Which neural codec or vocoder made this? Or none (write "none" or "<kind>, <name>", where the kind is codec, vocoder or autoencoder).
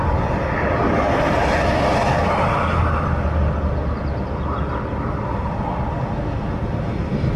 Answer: none